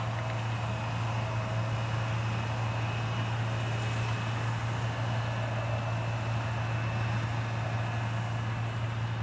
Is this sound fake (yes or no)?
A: no